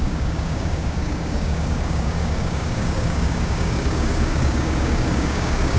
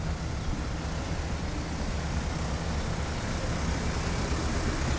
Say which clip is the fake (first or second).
first